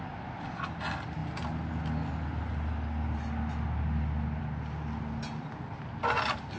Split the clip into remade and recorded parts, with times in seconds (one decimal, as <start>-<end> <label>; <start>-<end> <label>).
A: 0.0-6.6 recorded